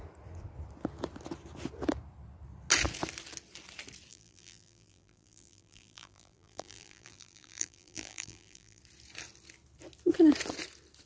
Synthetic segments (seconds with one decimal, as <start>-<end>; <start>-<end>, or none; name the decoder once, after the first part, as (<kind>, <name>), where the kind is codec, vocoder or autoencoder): 4.1-8.8 (vocoder, BigVGAN v2)